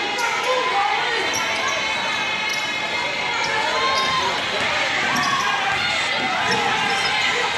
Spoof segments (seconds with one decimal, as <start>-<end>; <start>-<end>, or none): none